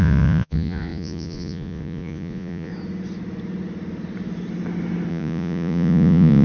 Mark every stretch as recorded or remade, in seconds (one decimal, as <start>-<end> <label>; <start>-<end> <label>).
0.0-2.7 remade; 2.7-5.1 recorded; 5.1-6.4 remade